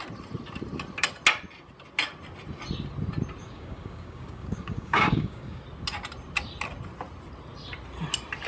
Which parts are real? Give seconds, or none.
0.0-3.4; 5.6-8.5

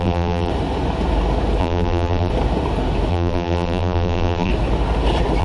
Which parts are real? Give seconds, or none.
0.5-1.6; 2.3-3.1; 4.5-5.4

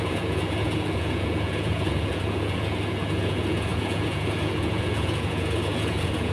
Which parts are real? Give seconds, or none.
none